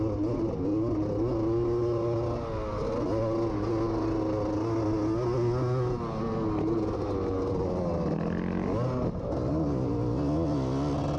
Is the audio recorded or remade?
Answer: recorded